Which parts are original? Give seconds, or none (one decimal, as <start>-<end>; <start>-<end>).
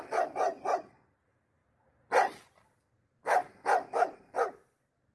0.0-5.1